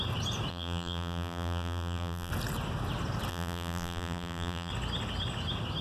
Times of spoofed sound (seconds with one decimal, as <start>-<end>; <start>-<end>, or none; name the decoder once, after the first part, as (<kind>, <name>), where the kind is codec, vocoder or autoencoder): 0.5-2.3 (vocoder, BigVGAN v2); 3.3-4.7